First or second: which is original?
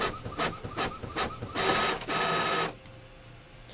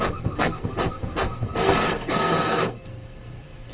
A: first